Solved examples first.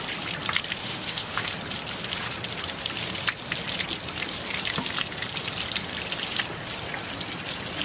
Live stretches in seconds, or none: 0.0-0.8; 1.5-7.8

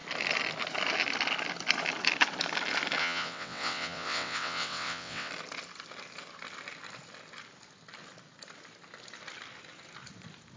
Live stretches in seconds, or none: 0.0-3.0; 5.3-10.6

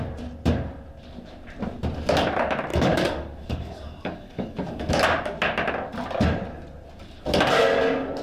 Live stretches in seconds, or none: 0.0-2.7; 4.9-8.2

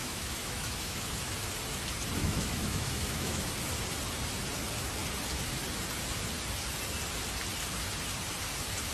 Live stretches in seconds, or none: 1.1-2.2; 3.4-8.9

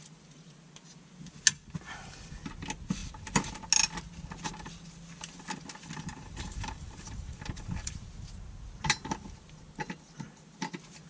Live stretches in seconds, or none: 0.0-6.1; 7.9-11.1